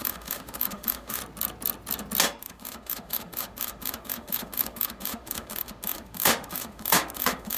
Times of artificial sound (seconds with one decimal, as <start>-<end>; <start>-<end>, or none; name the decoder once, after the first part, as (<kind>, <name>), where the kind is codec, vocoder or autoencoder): 0.0-1.2 (autoencoder, DAC-VAE); 2.4-7.6